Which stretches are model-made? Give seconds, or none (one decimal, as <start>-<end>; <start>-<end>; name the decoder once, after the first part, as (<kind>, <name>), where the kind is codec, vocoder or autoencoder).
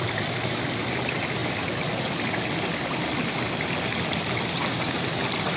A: none